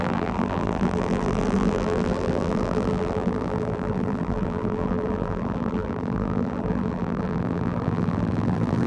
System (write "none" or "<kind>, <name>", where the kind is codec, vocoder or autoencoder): vocoder, BigVGAN v2